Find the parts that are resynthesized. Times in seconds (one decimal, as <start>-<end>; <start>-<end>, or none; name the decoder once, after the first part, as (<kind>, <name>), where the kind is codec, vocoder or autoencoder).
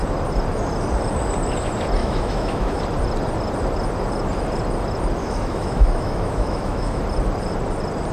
2.0-2.8 (autoencoder, DAC-VAE); 5.2-7.0